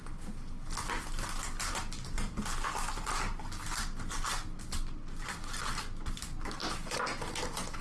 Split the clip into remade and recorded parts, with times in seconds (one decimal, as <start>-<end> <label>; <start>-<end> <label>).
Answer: 0.0-7.8 recorded